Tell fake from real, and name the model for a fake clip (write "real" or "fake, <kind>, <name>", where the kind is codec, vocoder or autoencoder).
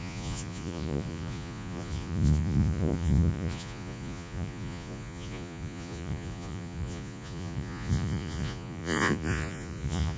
fake, vocoder, Vocos